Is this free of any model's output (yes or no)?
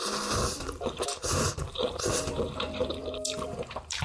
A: no